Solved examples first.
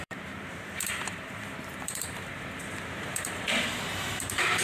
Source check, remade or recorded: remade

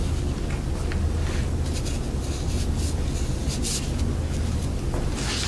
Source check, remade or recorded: recorded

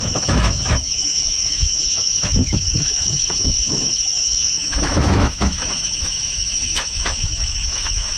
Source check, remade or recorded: remade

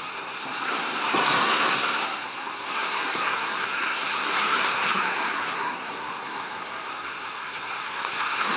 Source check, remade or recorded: remade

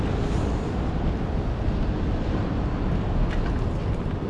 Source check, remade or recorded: recorded